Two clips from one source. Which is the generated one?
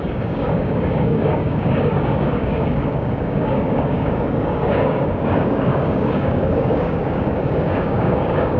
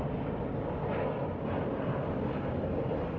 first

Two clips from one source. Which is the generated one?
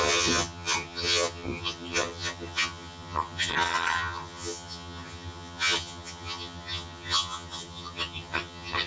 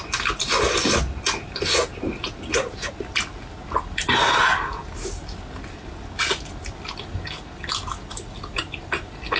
first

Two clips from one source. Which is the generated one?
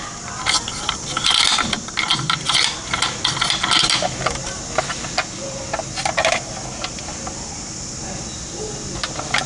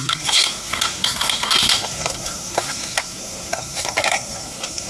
second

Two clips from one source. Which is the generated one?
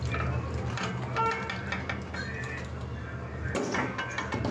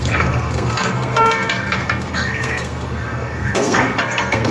second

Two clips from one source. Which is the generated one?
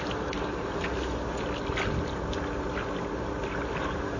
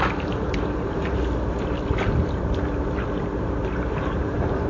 second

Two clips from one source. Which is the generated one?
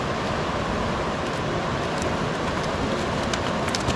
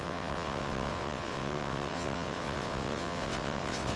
second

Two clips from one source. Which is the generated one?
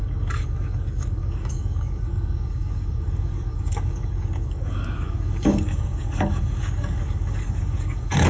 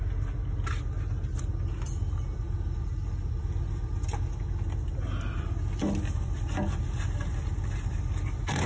first